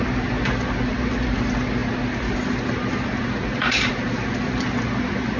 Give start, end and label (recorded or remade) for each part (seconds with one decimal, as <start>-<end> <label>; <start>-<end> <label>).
0.0-5.4 recorded